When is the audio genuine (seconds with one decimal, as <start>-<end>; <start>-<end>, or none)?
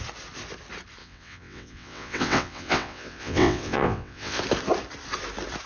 0.0-1.0; 4.4-5.7